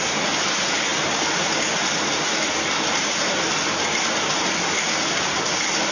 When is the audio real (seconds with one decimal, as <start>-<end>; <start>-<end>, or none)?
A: 0.0-5.9

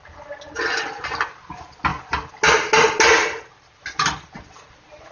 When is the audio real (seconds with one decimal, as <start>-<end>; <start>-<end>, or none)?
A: 0.0-5.1

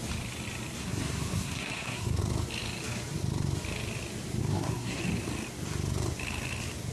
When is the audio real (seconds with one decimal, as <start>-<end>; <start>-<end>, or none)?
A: 0.0-0.8; 2.2-4.4; 5.0-6.9

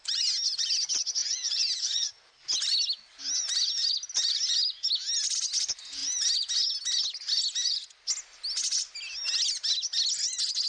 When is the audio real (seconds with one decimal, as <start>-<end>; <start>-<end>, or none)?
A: 0.0-1.2; 2.1-10.7

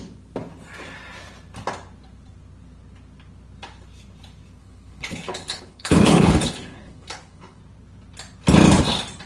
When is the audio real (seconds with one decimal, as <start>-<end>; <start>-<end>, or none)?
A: 0.0-4.6; 7.6-9.3

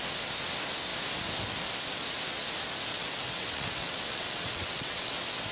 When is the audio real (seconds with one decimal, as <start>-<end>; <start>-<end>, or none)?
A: 0.0-2.9; 5.1-5.5